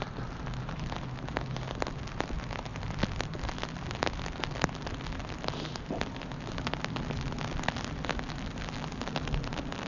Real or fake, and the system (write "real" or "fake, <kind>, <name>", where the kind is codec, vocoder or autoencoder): real